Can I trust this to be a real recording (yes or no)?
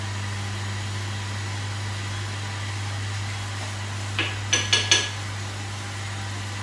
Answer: yes